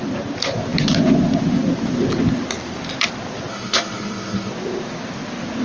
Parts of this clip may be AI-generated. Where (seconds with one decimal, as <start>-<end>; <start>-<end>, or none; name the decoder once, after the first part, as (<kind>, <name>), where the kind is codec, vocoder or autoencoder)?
3.5-4.5 (codec, SNAC)

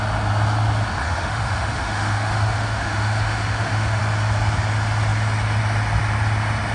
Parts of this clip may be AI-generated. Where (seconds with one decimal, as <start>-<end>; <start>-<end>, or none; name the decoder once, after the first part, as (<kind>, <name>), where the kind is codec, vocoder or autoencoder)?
1.0-4.0 (autoencoder, DAC-VAE)